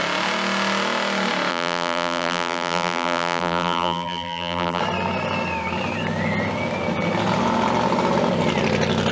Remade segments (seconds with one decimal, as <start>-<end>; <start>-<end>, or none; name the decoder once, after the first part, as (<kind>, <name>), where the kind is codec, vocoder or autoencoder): 1.5-4.8 (vocoder, BigVGAN v2)